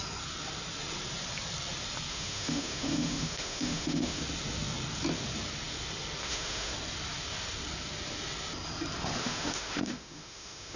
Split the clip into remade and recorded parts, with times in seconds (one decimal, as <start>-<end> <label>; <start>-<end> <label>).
0.0-2.1 recorded; 2.1-4.2 remade; 4.2-6.2 recorded; 6.2-6.7 remade; 6.7-9.2 recorded; 9.2-10.8 remade